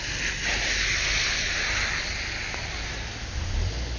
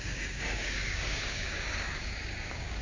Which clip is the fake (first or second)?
second